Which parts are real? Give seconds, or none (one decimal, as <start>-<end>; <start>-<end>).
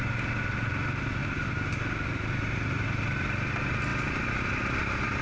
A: 0.0-5.2